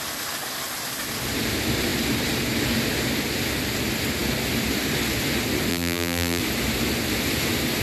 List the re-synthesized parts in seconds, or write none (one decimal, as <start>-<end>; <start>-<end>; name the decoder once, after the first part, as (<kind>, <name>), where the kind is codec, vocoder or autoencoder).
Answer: 5.7-6.4 (vocoder, BigVGAN v2)